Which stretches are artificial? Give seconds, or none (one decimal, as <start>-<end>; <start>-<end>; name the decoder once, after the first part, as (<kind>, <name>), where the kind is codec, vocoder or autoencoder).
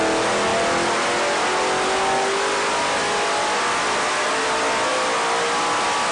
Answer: none